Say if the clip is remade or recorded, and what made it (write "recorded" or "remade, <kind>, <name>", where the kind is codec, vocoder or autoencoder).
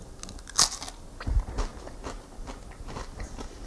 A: recorded